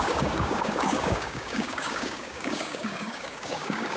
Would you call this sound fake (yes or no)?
yes